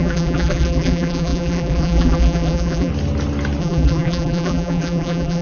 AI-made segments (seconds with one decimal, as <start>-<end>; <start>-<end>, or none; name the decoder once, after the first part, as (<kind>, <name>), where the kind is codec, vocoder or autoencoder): 0.0-2.9 (vocoder, BigVGAN v2); 3.6-5.4